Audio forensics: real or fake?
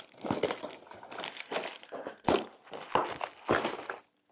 real